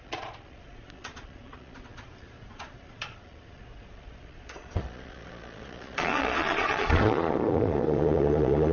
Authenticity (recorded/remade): remade